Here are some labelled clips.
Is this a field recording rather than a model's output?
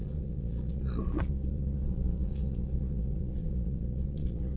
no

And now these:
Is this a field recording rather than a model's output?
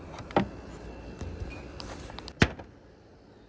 yes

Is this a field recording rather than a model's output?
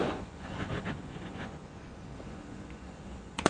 no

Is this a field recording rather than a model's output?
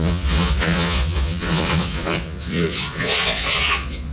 no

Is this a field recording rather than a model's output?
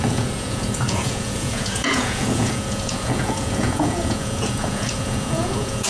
no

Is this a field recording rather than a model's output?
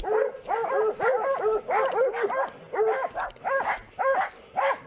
yes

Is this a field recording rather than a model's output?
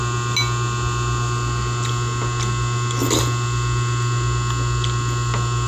yes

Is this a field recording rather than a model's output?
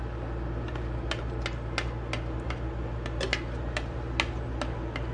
yes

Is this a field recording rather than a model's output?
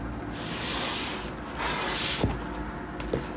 yes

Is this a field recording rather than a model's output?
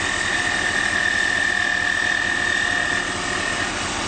yes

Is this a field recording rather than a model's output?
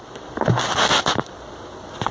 yes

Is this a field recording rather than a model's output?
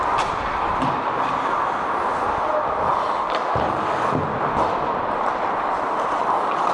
yes